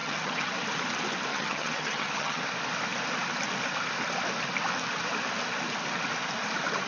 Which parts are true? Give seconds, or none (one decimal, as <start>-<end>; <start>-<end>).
0.5-1.3; 2.4-6.9